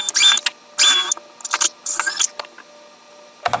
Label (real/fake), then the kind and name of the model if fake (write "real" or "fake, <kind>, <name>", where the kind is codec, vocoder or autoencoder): real